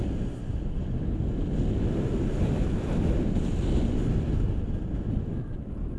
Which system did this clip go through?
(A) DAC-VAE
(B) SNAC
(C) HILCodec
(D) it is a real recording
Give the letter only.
D